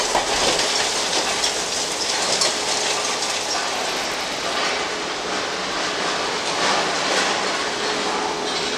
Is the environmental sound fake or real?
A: real